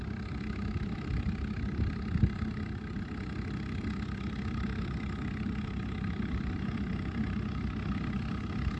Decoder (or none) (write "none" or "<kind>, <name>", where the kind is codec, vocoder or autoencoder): none